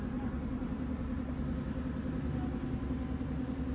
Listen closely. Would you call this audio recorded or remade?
recorded